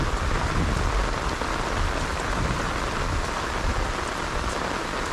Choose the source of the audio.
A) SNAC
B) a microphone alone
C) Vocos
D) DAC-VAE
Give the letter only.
B